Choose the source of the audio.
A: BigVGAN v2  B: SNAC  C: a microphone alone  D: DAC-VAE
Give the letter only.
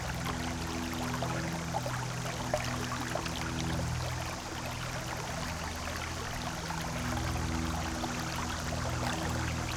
C